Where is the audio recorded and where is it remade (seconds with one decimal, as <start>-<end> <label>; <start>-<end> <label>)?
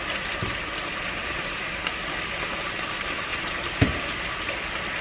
0.0-1.2 recorded; 1.2-1.8 remade; 1.8-3.3 recorded; 3.3-4.0 remade; 4.0-5.0 recorded